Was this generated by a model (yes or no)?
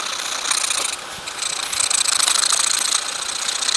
no